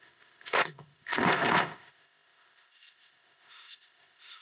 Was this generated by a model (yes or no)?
yes